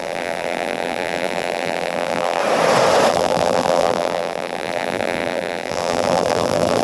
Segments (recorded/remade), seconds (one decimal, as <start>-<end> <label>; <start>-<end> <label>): 0.0-2.4 remade; 2.4-3.1 recorded; 3.1-6.8 remade